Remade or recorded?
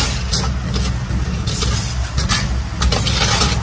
recorded